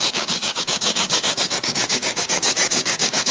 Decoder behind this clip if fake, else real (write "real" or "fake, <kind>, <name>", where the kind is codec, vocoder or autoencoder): fake, codec, DAC